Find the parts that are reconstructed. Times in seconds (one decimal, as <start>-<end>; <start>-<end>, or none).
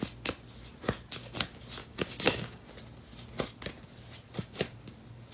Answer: 1.8-2.7